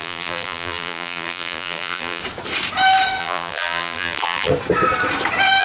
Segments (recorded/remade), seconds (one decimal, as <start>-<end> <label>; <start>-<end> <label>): 0.0-2.2 remade; 2.2-3.2 recorded; 3.2-4.5 remade; 4.5-5.6 recorded